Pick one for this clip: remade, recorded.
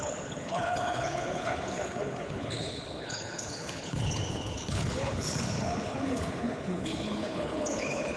remade